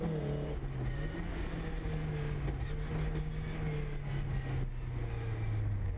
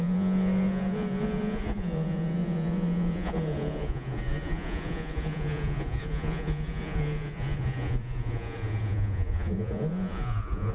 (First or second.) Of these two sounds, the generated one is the second